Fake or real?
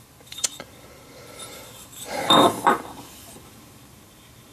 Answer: fake